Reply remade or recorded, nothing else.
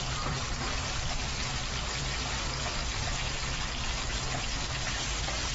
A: remade